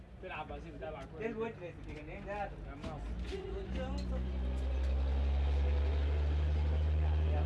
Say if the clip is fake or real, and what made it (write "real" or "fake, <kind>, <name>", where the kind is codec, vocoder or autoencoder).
real